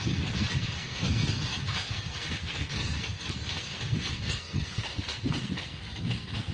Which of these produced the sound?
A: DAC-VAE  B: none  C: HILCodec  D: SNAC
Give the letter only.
D